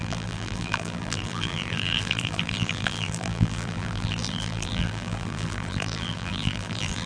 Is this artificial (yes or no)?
yes